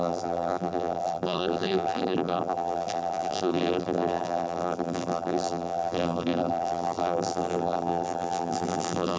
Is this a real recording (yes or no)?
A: no